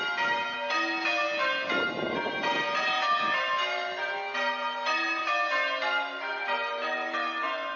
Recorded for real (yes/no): yes